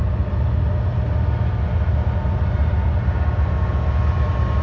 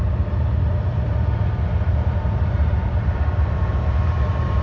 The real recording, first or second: first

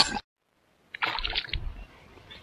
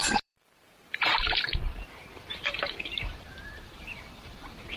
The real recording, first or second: first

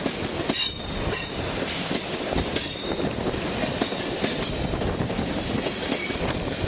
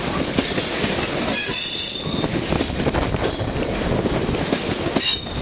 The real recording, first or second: second